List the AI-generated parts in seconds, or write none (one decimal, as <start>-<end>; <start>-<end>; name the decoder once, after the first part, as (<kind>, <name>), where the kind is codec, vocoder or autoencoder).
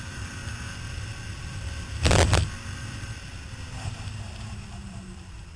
0.0-0.4 (vocoder, BigVGAN v2); 3.7-5.6